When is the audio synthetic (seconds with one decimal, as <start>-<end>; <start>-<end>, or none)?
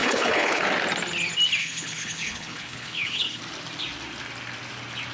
0.0-0.6; 1.6-3.4